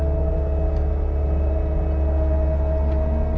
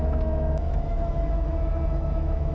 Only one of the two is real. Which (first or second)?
first